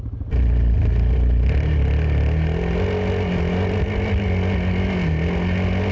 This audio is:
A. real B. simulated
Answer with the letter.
A